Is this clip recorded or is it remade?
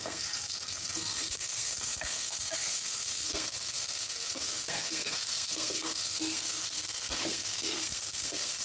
remade